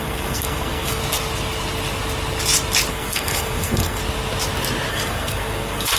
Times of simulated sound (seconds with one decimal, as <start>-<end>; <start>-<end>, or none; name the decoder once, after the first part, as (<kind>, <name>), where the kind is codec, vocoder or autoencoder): 0.0-1.0 (codec, SNAC); 2.9-4.0; 4.9-6.0